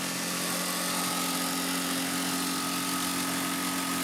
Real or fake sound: real